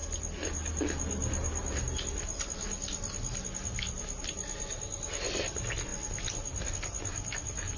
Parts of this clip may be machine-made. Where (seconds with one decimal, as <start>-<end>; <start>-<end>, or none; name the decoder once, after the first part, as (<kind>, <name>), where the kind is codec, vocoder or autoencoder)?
none

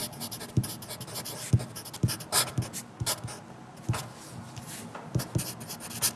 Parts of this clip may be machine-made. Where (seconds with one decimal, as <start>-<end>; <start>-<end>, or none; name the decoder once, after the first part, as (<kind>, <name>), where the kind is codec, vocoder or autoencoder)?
none

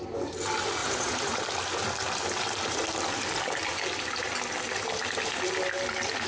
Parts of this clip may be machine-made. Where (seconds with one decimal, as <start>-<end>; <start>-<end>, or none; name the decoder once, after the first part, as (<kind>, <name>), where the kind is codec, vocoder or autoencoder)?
0.8-1.4 (vocoder, Vocos)